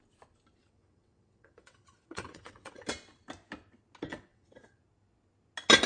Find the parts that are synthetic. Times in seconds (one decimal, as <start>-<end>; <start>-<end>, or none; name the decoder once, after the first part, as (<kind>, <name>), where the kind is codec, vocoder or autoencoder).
0.6-2.8 (vocoder, WaveNeXt); 4.1-4.8